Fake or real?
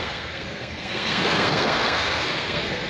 fake